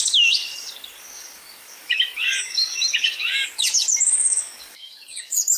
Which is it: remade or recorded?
remade